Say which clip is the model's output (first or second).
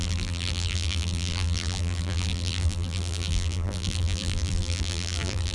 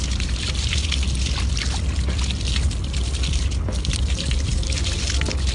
first